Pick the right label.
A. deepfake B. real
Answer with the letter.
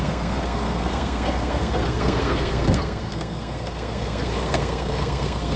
A